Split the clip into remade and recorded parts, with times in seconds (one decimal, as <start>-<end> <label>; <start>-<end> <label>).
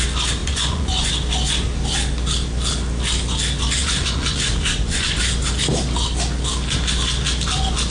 0.0-0.4 recorded; 0.4-1.1 remade; 1.1-3.8 recorded; 3.8-5.2 remade; 5.2-7.9 recorded